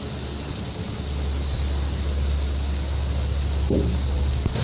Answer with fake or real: real